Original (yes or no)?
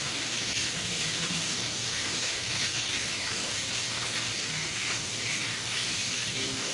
no